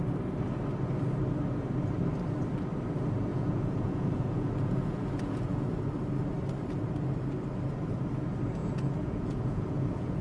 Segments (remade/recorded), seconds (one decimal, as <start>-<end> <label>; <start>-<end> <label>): 0.0-3.3 recorded; 3.3-5.7 remade; 5.7-8.6 recorded; 8.6-10.2 remade